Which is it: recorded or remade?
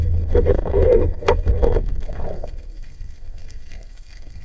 remade